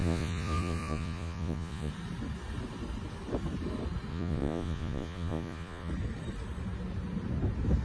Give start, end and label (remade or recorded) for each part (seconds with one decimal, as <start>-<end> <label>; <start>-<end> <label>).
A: 0.0-1.9 remade; 1.9-4.1 recorded; 4.1-5.9 remade; 5.9-7.8 recorded